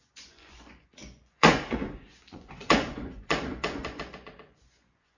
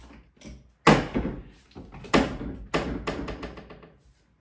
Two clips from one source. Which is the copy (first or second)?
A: first